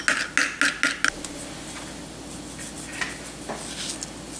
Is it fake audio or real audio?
real